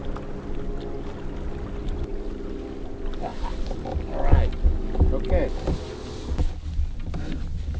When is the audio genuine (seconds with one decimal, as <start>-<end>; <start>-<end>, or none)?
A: 0.0-7.8